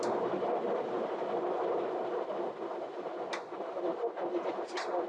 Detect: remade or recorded recorded